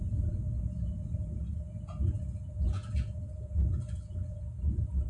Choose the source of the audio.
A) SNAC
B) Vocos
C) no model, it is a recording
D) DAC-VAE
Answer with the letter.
B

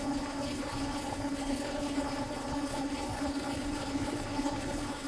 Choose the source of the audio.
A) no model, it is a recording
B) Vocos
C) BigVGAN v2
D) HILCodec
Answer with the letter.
D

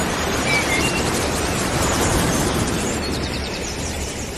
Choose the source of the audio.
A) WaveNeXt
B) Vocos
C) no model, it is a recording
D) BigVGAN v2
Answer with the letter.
D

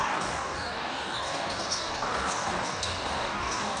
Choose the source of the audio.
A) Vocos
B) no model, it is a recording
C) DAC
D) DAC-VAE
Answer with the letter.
C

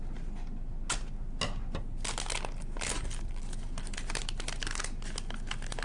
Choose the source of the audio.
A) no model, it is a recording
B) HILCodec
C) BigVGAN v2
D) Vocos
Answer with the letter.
A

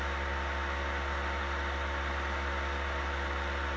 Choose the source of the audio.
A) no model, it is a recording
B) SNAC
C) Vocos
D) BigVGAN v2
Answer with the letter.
A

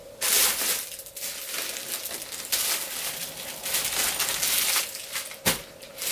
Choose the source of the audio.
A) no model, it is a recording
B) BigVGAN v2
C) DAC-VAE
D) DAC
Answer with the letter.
A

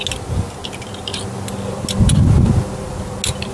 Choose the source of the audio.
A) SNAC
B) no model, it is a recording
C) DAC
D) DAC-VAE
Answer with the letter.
B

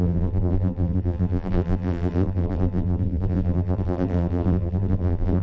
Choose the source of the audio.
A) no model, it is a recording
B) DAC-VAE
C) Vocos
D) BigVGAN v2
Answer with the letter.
D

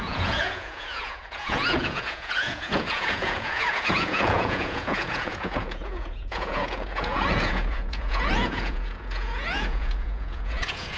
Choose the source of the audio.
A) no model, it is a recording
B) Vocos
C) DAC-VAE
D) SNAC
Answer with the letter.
B